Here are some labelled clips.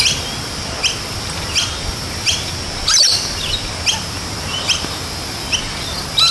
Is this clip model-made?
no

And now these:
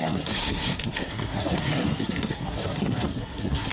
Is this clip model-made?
yes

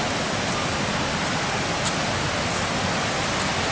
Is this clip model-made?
no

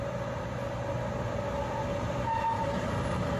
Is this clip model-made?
no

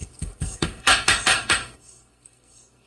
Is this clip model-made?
yes